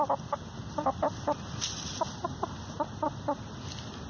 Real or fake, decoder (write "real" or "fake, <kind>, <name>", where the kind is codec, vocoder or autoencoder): fake, vocoder, BigVGAN v2